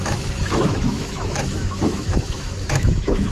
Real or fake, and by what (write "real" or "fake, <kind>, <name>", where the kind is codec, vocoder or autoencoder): fake, autoencoder, DAC-VAE